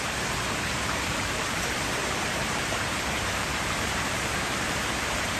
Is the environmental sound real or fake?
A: fake